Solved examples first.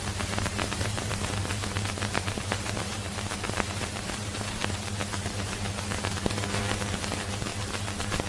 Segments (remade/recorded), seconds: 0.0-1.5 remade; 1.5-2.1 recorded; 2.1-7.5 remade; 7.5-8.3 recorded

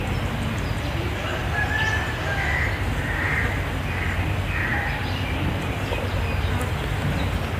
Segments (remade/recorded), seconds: 0.0-7.6 recorded

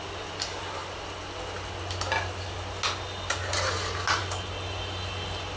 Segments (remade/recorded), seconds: 0.0-5.6 recorded

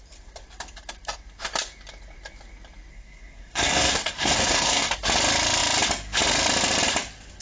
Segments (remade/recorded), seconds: 0.0-2.9 recorded; 2.9-4.9 remade; 4.9-7.4 recorded